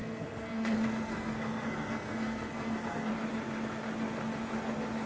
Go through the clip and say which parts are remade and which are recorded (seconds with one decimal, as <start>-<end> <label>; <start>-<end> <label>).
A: 0.0-3.1 remade; 3.1-5.1 recorded